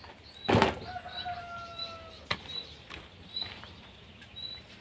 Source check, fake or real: real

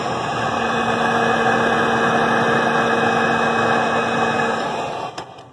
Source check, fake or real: real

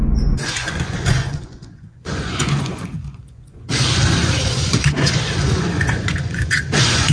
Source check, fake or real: fake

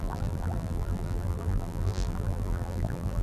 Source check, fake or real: fake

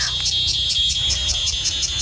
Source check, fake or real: real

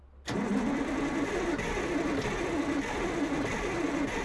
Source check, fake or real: real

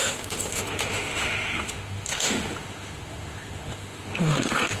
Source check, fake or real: fake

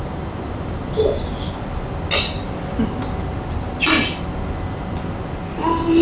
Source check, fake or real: real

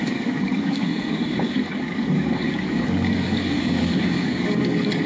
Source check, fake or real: fake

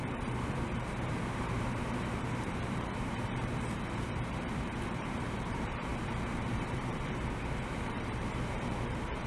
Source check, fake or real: fake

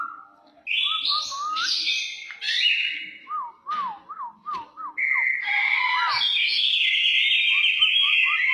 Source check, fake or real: real